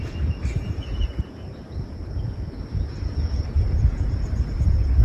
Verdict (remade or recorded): remade